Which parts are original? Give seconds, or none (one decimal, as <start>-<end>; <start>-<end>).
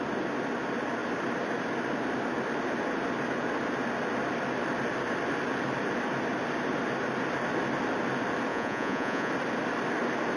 0.0-8.5; 9.3-10.4